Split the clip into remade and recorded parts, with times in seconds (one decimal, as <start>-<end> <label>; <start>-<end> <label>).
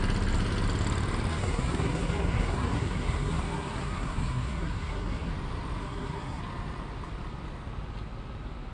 0.0-1.3 recorded; 1.3-5.3 remade; 5.3-5.8 recorded; 5.8-6.4 remade; 6.4-8.7 recorded